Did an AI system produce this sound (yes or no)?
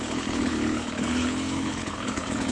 yes